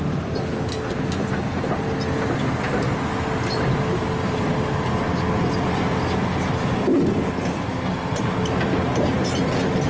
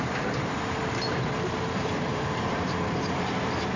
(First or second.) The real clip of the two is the first